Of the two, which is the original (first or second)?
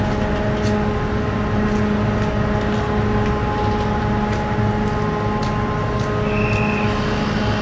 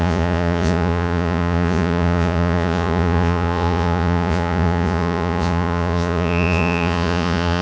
first